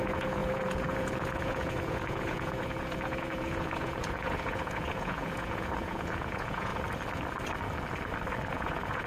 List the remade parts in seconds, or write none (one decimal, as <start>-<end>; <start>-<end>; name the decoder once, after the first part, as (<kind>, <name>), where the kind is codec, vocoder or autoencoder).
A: 0.0-6.7 (vocoder, Vocos); 8.5-9.1